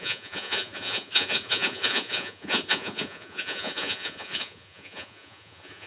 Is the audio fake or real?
fake